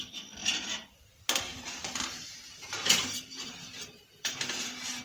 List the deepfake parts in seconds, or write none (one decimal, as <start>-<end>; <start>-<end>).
0.4-1.0; 1.5-3.7